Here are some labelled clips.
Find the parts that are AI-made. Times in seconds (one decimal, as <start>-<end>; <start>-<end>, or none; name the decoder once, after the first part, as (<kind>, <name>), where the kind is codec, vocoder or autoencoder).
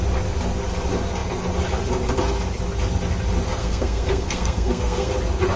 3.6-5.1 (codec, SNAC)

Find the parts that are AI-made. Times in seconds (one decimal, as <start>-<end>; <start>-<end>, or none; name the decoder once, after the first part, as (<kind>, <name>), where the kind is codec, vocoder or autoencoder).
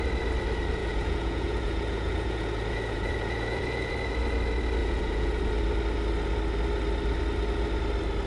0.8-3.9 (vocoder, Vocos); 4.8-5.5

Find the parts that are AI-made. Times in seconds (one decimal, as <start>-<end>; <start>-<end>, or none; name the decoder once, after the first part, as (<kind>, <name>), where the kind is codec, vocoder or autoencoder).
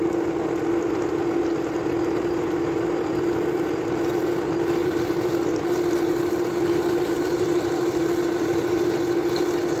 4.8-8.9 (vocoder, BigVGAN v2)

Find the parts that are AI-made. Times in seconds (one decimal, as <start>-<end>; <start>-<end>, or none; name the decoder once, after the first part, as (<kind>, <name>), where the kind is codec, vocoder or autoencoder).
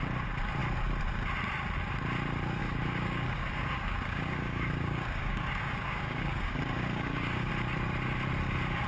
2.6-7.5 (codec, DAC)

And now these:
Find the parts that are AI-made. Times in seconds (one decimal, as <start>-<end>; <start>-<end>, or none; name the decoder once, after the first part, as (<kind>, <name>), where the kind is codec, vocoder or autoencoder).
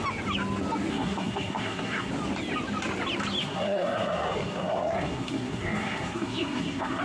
0.9-2.1 (codec, SNAC); 3.4-7.0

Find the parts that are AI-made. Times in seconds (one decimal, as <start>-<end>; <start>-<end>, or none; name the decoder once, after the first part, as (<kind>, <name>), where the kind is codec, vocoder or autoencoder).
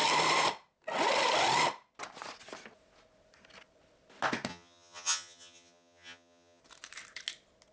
4.5-6.6 (vocoder, HiFi-GAN)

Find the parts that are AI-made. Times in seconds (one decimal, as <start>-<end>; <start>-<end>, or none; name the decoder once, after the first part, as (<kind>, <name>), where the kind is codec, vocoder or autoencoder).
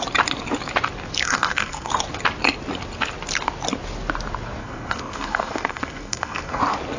1.2-1.9 (codec, SNAC); 4.6-6.6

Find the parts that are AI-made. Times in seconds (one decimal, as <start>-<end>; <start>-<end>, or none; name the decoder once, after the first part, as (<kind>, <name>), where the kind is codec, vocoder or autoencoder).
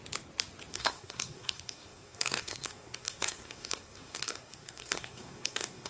0.7-5.9 (codec, SNAC)